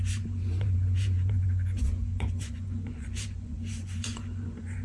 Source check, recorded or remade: remade